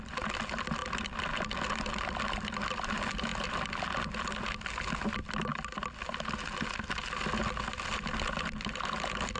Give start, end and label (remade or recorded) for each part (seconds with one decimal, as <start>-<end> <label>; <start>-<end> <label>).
0.0-9.4 recorded